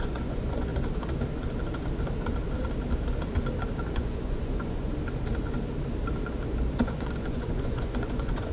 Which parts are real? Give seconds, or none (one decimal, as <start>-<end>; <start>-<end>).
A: 0.7-3.9; 4.9-6.8